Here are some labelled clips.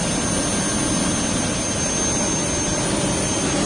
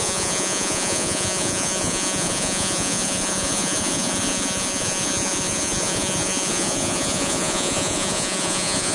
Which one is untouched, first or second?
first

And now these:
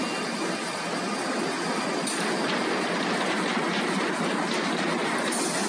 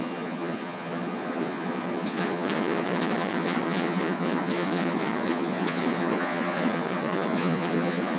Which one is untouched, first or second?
first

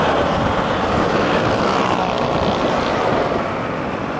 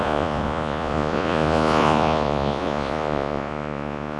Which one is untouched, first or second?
first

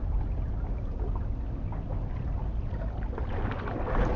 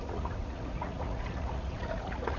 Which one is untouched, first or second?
first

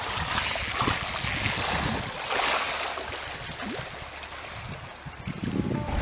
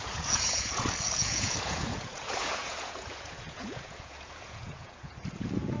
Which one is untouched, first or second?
first